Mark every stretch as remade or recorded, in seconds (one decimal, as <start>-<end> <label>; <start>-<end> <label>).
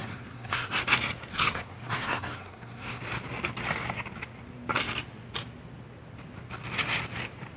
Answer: 0.0-0.8 remade; 0.8-1.3 recorded; 1.3-3.0 remade; 3.0-7.6 recorded